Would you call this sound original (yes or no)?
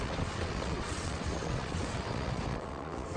no